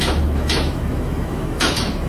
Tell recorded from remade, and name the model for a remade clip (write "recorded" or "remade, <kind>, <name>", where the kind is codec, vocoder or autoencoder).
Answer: remade, autoencoder, DAC-VAE